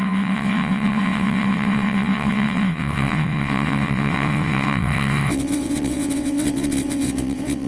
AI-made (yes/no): yes